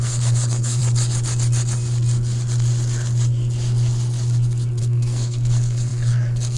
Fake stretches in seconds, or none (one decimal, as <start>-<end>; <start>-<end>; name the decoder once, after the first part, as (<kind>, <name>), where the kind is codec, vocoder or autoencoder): 0.0-0.8 (codec, SNAC); 4.8-6.6